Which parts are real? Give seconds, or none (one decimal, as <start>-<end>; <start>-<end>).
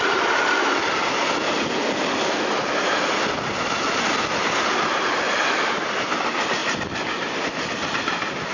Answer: 0.0-8.5